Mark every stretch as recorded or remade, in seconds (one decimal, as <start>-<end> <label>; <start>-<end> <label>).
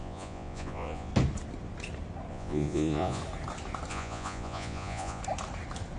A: 0.0-1.1 remade; 1.1-2.3 recorded; 2.3-3.2 remade; 3.2-3.9 recorded; 3.9-5.2 remade; 5.2-6.0 recorded